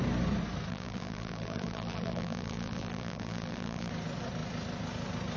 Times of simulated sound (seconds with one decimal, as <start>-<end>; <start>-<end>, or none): 0.7-3.9